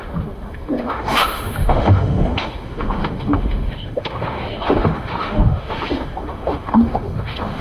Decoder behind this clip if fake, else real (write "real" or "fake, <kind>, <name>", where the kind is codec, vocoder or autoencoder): fake, autoencoder, DAC-VAE